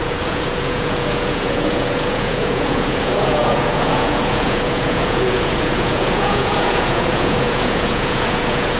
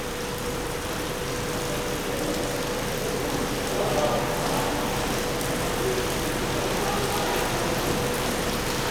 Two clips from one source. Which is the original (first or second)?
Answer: second